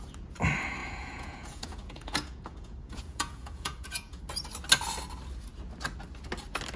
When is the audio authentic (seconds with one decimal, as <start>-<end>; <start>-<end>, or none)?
0.0-0.8; 4.2-6.8